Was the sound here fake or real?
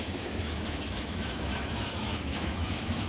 fake